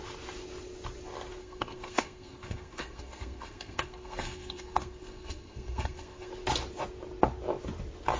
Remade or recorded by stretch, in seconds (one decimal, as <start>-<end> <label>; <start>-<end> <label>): 0.0-1.4 recorded; 1.4-6.3 remade; 6.3-8.2 recorded